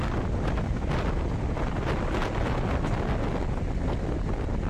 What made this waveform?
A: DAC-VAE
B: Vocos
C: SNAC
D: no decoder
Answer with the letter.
D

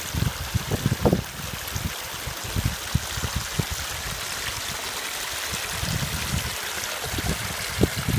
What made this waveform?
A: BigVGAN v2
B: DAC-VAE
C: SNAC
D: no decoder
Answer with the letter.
D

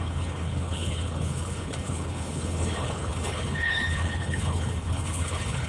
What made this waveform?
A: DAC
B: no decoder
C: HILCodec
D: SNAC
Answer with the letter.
C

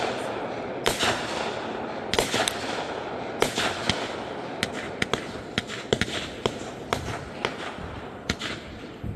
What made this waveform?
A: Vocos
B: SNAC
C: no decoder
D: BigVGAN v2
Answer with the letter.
C